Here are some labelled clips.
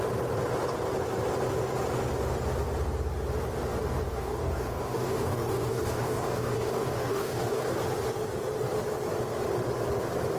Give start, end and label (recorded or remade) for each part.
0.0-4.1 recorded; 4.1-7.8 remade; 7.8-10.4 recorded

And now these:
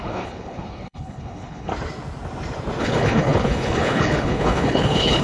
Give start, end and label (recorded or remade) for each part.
0.0-1.7 remade; 1.7-2.8 recorded; 2.8-5.2 remade

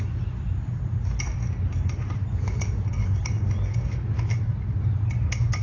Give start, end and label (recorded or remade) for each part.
0.0-3.0 recorded; 3.0-3.5 remade; 3.5-5.6 recorded

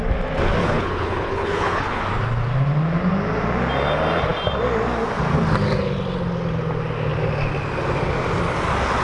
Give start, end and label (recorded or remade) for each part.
0.0-0.6 recorded; 0.6-2.0 remade; 2.0-9.0 recorded

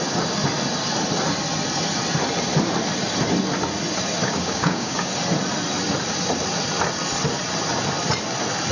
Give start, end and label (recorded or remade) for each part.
0.0-4.2 recorded; 4.2-5.1 remade; 5.1-8.7 recorded